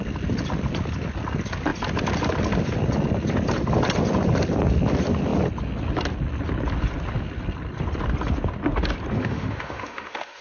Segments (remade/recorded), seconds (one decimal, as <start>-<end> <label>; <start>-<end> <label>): 0.0-9.2 recorded; 9.2-10.4 remade